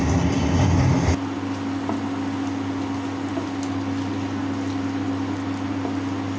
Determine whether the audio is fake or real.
real